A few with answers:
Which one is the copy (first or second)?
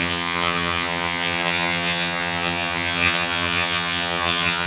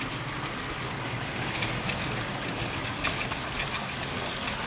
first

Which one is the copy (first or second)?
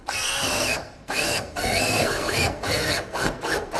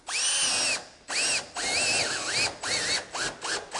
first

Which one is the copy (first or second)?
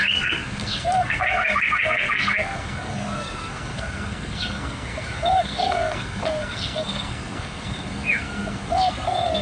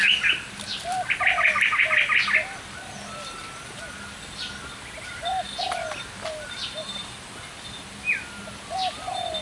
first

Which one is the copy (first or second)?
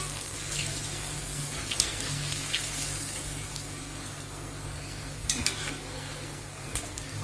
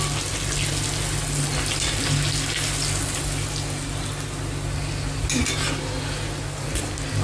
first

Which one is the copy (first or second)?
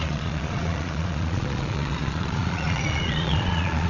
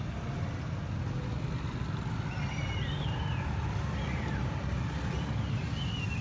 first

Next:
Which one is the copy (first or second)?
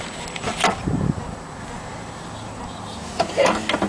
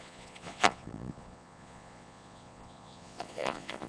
second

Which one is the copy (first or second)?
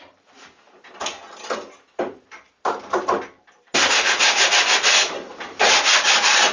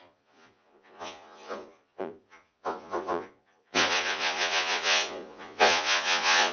second